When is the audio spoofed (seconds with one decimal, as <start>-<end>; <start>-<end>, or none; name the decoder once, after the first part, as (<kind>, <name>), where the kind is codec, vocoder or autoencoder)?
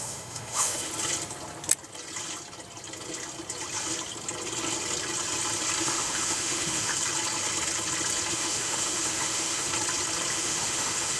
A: 0.0-0.9 (autoencoder, DAC-VAE); 5.8-6.9; 8.3-9.7; 10.3-11.2